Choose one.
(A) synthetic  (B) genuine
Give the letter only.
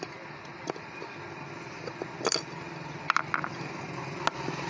B